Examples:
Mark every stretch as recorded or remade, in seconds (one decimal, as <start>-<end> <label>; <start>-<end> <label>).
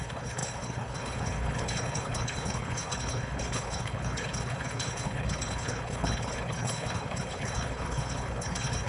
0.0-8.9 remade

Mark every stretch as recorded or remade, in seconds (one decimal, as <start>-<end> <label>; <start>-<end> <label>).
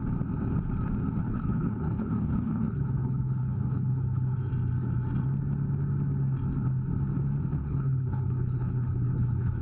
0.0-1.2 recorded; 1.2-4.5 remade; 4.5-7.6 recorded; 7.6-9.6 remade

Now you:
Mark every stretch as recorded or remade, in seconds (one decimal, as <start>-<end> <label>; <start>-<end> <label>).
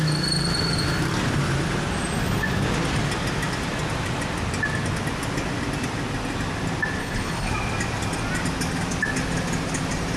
0.0-7.0 recorded; 7.0-7.5 remade; 7.5-10.2 recorded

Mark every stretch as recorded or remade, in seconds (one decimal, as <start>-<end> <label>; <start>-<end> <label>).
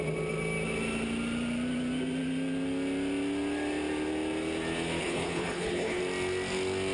0.0-5.0 recorded; 5.0-6.0 remade; 6.0-6.9 recorded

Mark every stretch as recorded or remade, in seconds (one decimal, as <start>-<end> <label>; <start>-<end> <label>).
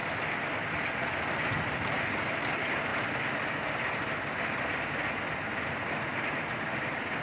0.0-7.2 recorded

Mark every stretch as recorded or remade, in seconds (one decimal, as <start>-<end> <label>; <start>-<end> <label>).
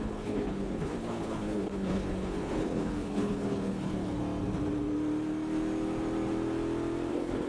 0.0-4.2 remade; 4.2-7.1 recorded; 7.1-7.5 remade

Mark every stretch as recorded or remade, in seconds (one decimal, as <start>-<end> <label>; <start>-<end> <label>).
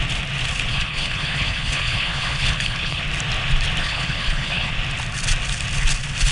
0.0-0.7 recorded; 0.7-3.0 remade; 3.0-3.8 recorded; 3.8-4.7 remade; 4.7-6.3 recorded